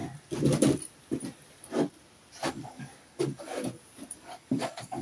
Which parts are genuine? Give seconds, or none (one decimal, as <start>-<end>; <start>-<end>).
0.0-2.5; 3.5-4.1